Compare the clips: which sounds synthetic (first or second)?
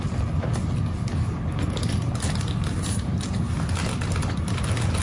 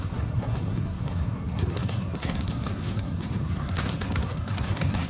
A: second